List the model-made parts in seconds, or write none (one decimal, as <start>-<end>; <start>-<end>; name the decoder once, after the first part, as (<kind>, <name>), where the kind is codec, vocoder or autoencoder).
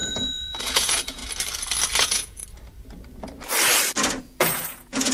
0.0-1.2 (vocoder, Vocos); 2.0-2.4; 4.2-5.1